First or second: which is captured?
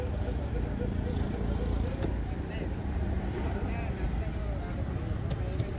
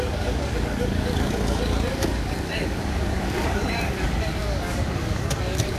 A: first